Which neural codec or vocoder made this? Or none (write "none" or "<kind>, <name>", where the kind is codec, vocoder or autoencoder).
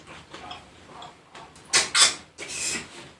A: none